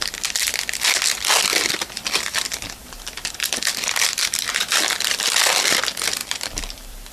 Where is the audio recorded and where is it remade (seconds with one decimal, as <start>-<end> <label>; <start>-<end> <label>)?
0.0-1.5 recorded; 1.5-5.8 remade; 5.8-6.2 recorded; 6.2-7.1 remade